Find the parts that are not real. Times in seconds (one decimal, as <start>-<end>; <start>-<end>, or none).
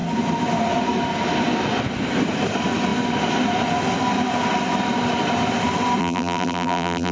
6.0-7.1